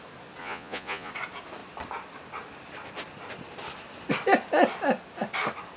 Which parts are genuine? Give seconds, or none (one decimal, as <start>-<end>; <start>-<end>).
0.0-0.4; 1.1-5.8